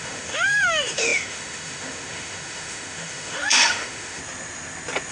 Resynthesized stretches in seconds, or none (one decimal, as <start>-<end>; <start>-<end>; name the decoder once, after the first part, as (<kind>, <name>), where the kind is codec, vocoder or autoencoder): 0.0-4.2 (autoencoder, DAC-VAE)

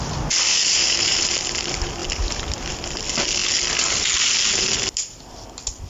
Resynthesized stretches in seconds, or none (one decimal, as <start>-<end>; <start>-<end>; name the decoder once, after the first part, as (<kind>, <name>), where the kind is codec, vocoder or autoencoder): 0.5-1.2 (autoencoder, DAC-VAE)

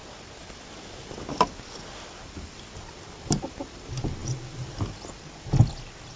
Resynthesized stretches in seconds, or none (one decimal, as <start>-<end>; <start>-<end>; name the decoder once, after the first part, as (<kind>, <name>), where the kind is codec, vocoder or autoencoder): none

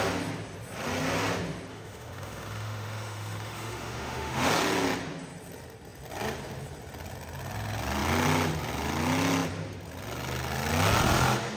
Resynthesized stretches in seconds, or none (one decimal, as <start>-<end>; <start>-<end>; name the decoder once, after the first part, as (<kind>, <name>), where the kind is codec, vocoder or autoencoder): 1.7-4.5 (autoencoder, DAC-VAE)